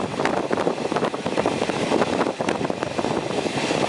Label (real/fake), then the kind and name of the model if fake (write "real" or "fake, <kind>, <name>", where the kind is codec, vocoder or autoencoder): fake, vocoder, BigVGAN v2